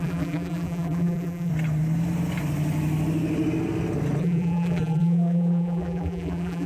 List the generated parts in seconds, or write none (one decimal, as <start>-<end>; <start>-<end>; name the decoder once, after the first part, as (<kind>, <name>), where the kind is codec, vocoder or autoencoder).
0.0-1.5 (vocoder, BigVGAN v2); 4.2-6.7